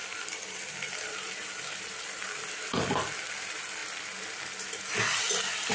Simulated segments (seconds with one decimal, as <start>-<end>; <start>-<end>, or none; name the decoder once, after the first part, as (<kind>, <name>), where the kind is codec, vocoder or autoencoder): 0.0-3.4 (vocoder, BigVGAN v2)